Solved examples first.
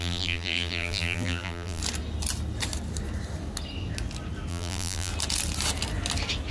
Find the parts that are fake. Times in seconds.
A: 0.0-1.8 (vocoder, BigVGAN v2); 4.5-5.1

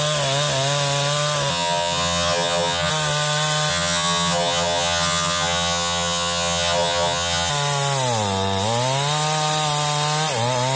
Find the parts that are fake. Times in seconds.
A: 1.5-2.9 (vocoder, HiFi-GAN); 3.7-7.5

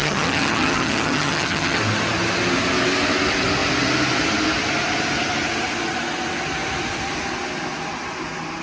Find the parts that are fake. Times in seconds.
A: 0.0-1.8 (vocoder, HiFi-GAN)

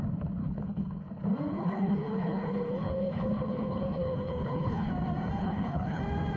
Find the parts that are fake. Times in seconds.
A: 0.4-1.0 (codec, HILCodec); 1.5-4.9; 5.4-6.0

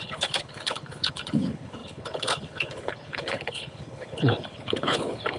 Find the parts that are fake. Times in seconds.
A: 0.0-5.4 (codec, HILCodec)

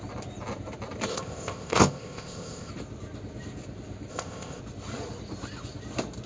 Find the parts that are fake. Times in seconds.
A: 1.1-2.7 (codec, ZipCodec); 4.1-4.6